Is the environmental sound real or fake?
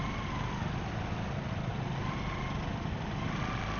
real